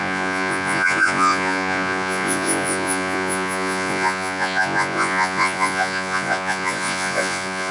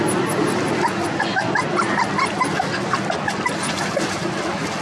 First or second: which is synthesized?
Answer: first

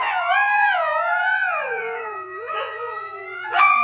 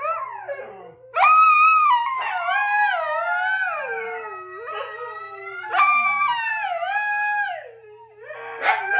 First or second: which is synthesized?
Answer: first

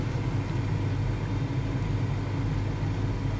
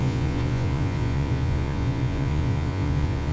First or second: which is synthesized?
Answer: second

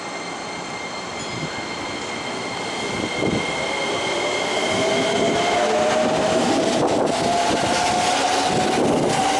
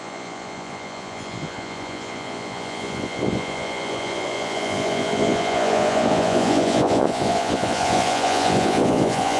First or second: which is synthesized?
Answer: second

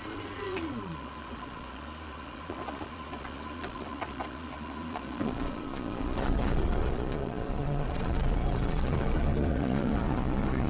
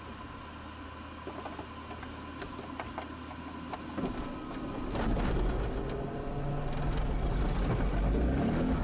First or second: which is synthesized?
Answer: first